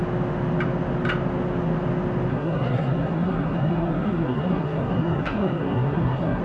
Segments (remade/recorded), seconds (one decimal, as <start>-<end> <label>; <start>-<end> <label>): 0.0-2.3 recorded; 2.3-6.4 remade